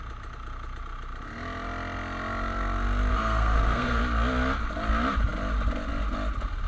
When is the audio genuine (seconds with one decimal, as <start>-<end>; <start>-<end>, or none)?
0.0-3.1; 4.0-6.7